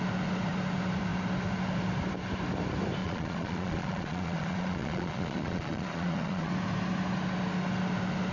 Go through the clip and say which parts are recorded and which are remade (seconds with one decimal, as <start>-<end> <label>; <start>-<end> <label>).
0.0-3.0 recorded; 3.0-6.5 remade; 6.5-8.3 recorded